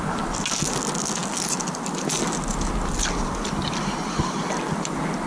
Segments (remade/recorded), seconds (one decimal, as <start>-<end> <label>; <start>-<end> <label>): 0.0-5.3 recorded